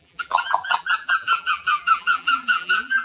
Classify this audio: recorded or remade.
remade